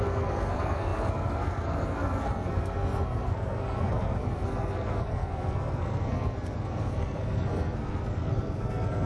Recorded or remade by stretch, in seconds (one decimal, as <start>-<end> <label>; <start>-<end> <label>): 0.0-9.1 remade